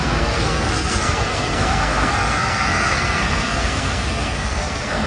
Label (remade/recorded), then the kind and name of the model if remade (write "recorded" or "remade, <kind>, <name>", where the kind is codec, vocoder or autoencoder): remade, codec, SNAC